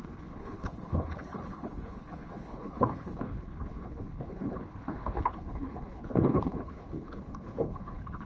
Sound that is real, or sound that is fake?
fake